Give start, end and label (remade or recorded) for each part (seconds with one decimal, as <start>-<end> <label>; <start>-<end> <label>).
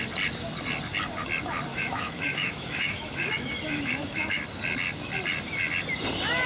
0.0-1.7 recorded; 1.7-4.4 remade; 4.4-6.5 recorded